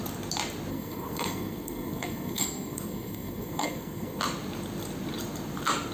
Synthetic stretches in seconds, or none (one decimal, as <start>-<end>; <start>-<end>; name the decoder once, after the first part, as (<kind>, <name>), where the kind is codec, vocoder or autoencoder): 0.7-4.2 (codec, SNAC)